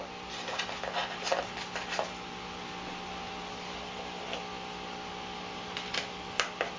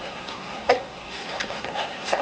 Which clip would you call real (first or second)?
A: first